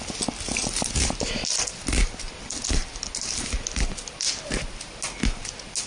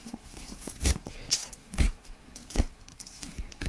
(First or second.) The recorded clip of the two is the first